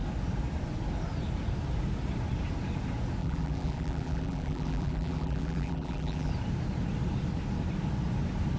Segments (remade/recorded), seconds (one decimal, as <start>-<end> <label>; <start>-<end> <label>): 0.0-3.2 recorded; 3.2-6.3 remade; 6.3-8.6 recorded